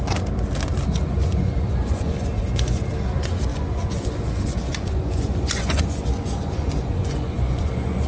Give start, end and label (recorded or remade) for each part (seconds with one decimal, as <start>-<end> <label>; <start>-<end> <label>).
0.0-1.1 recorded; 1.1-2.8 remade; 2.8-3.5 recorded; 3.5-8.1 remade